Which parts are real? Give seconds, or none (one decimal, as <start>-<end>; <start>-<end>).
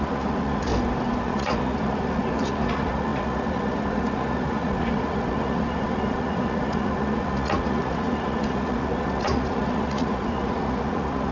0.7-1.2